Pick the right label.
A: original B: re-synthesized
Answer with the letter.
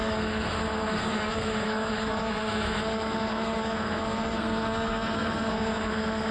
B